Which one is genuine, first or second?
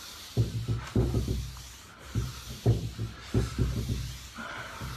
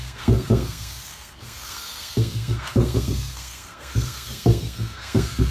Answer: first